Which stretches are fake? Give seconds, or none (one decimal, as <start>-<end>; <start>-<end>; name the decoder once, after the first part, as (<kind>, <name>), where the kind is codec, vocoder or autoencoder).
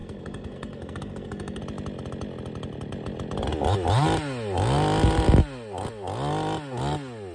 0.0-1.6 (codec, SNAC)